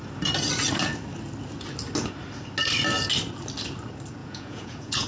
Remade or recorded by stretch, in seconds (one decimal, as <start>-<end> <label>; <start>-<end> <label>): 0.0-4.2 recorded; 4.2-5.1 remade